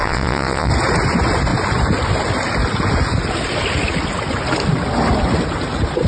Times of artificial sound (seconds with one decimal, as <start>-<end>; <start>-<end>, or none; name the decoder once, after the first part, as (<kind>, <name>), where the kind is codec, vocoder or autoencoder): 0.0-0.7 (vocoder, WaveNeXt)